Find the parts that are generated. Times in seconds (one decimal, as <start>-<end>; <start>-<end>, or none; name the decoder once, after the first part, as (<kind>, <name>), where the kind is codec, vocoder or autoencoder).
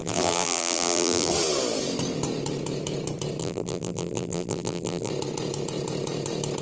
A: 0.0-1.3 (vocoder, BigVGAN v2); 3.4-5.1